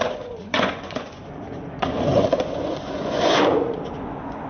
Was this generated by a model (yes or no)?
yes